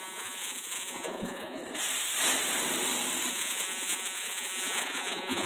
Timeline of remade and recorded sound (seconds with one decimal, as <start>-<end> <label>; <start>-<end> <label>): 0.0-1.6 remade; 1.6-3.3 recorded; 3.3-5.5 remade